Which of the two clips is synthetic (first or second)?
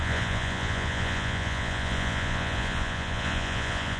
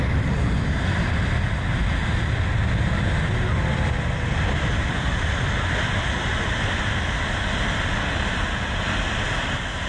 first